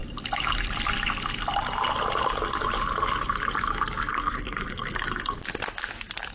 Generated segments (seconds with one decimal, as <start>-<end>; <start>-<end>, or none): 4.1-5.4